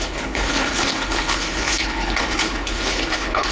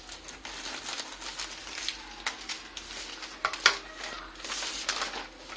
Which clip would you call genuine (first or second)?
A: second